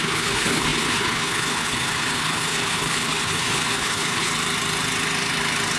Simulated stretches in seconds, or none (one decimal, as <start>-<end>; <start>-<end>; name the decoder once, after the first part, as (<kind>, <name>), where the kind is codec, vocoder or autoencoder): 0.0-4.3 (codec, HILCodec)